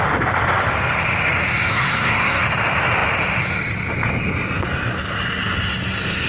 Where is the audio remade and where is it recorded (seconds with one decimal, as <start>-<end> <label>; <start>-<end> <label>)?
0.0-1.7 recorded; 1.7-2.4 remade; 2.4-6.3 recorded